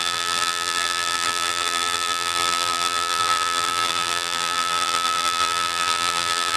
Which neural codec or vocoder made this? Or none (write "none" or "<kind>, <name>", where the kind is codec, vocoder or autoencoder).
vocoder, BigVGAN v2